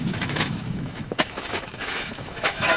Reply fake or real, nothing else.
fake